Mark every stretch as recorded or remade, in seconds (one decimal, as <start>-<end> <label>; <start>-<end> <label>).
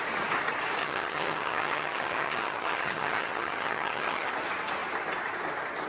0.0-0.8 recorded; 0.8-4.3 remade; 4.3-5.9 recorded